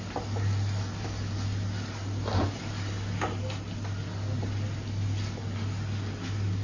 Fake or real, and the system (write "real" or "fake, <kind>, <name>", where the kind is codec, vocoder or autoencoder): real